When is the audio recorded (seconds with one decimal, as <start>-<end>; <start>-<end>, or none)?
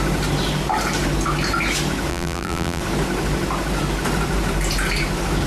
0.0-2.1; 2.8-5.5